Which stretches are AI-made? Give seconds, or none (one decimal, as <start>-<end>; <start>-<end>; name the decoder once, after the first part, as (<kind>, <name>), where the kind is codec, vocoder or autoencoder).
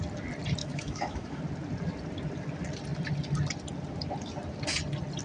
0.6-1.4 (autoencoder, DAC-VAE)